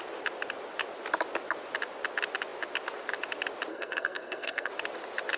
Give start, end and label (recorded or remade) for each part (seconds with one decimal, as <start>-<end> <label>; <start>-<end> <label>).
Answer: 0.0-3.7 recorded; 3.7-4.7 remade; 4.7-5.4 recorded